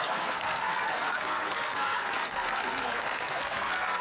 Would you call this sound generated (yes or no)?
yes